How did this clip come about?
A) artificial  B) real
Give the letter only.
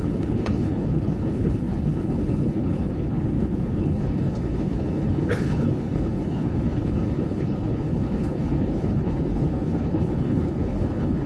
A